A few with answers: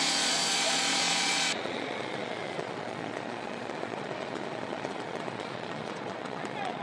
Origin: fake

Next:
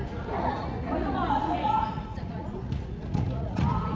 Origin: fake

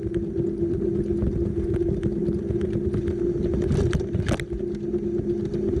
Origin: real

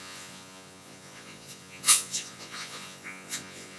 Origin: fake